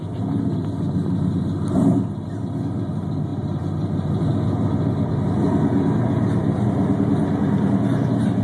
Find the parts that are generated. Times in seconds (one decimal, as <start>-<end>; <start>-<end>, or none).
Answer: none